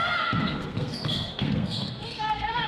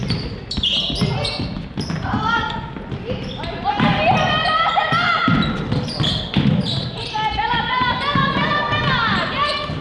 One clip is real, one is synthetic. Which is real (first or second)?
second